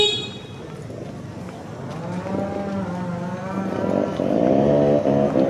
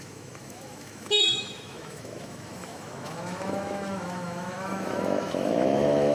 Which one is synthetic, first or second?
second